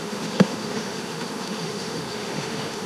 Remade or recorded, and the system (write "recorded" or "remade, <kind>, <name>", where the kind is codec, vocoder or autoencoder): remade, autoencoder, DAC-VAE